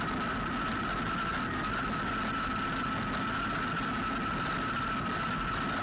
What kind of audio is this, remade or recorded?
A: recorded